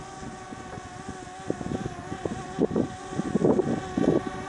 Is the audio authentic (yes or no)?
yes